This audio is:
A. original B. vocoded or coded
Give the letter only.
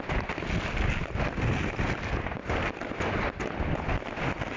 A